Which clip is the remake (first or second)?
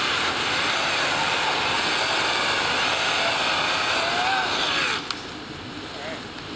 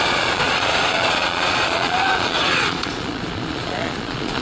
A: second